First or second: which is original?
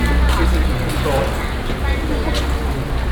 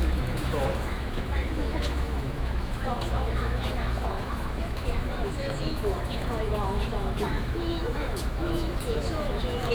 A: first